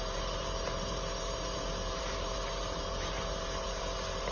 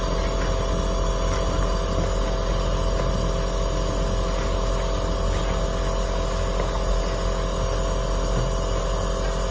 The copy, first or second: first